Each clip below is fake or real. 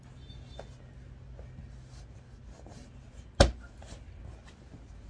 real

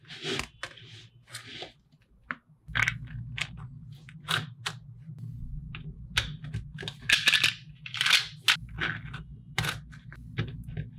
real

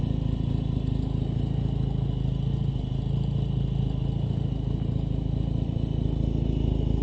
real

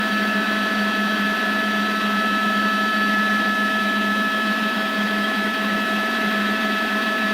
fake